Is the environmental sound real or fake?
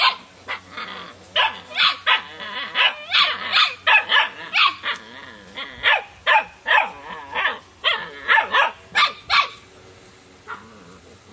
real